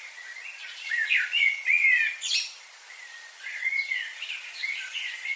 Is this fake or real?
fake